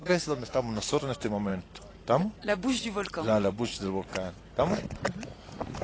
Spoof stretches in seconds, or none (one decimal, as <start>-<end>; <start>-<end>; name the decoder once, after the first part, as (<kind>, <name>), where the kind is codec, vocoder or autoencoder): 0.0-1.0 (codec, DAC)